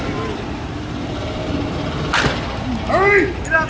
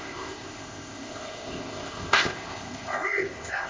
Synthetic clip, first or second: second